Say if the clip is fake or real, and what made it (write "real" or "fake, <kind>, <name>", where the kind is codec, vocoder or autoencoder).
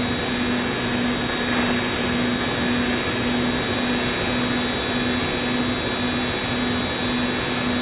real